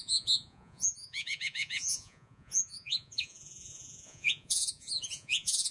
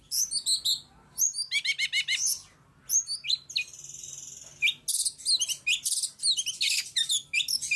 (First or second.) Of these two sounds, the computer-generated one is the first